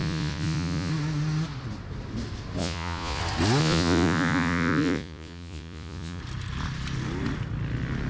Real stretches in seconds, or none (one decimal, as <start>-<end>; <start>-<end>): 0.9-2.6; 3.2-3.6; 6.2-8.1